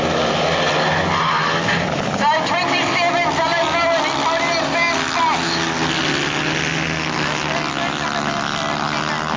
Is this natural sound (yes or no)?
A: yes